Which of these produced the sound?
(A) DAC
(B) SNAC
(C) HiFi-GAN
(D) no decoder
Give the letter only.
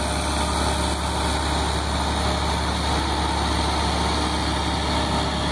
D